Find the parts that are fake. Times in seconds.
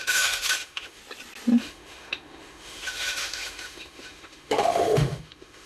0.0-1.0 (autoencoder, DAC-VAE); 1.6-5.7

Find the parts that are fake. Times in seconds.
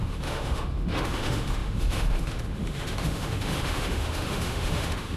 0.0-5.2 (autoencoder, DAC-VAE)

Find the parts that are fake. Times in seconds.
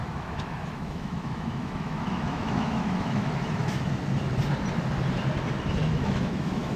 0.0-3.9 (autoencoder, DAC-VAE); 5.8-6.8